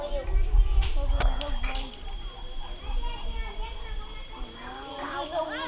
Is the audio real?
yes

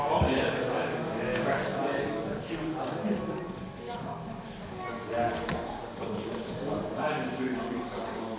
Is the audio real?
no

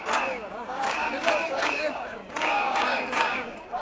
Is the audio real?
no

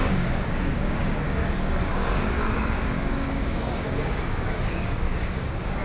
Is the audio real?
no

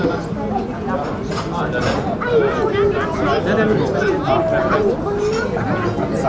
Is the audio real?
yes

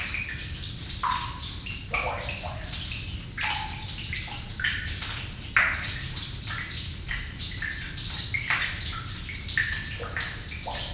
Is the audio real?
yes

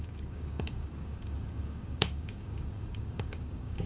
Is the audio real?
no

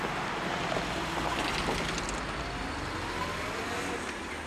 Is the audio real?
yes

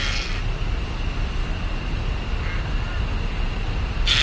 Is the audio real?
yes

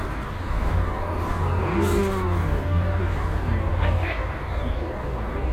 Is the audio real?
no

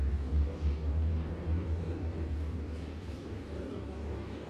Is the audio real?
no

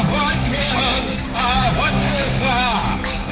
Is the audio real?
no